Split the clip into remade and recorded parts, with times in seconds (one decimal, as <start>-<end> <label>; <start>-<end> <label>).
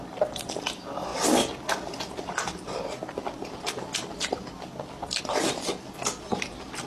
0.0-6.9 recorded